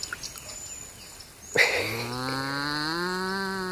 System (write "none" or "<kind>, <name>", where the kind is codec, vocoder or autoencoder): none